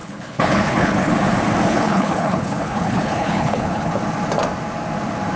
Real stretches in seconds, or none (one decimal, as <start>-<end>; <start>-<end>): 1.1-1.7; 4.0-5.4